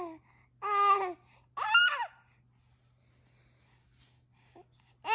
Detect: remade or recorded recorded